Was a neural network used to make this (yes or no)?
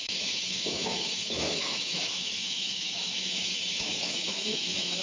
yes